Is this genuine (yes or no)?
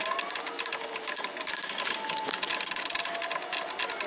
yes